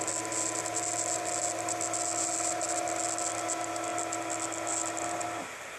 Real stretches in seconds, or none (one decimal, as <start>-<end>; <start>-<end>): 0.0-5.8